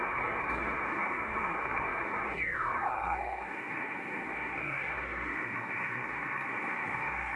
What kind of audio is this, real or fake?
fake